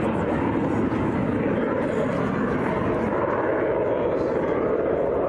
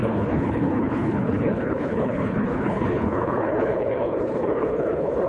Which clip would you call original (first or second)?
first